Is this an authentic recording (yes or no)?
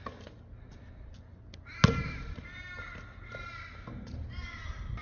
yes